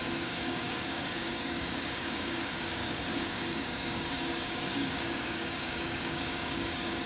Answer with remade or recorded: remade